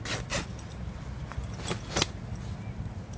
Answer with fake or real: real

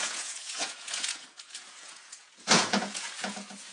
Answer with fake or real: fake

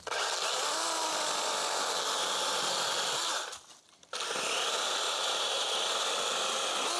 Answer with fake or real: real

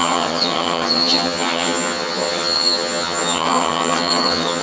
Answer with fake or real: fake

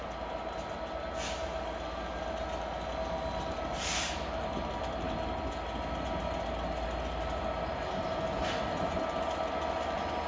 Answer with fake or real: real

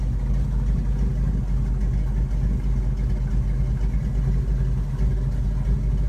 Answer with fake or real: real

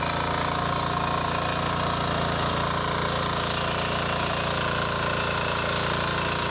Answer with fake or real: real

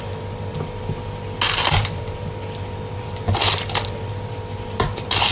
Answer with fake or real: real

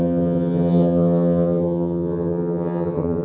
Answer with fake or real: fake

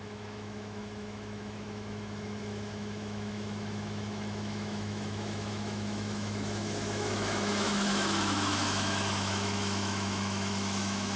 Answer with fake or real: fake